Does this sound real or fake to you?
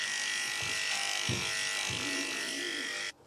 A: real